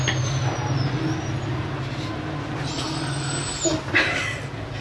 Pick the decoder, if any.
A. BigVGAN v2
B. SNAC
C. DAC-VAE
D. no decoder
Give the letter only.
D